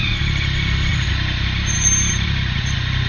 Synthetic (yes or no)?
yes